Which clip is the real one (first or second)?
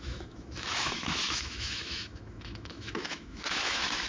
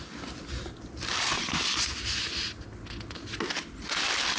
second